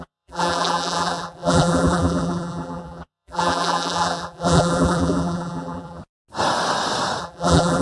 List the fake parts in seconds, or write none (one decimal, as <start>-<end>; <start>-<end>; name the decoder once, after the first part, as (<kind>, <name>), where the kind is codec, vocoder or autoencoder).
0.0-6.0 (vocoder, BigVGAN v2); 7.2-7.8